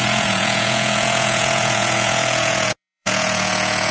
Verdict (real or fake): fake